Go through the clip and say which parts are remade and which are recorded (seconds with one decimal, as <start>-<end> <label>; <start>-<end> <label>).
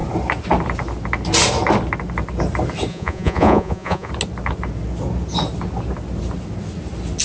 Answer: 0.0-2.9 recorded; 2.9-4.1 remade; 4.1-7.2 recorded